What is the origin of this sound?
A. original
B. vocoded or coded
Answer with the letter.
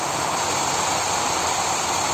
A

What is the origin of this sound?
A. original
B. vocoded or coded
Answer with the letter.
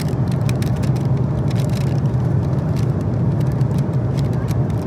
A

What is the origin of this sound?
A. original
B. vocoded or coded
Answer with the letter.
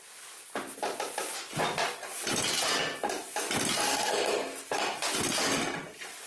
A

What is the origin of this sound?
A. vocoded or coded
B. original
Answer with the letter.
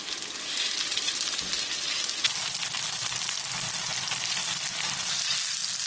B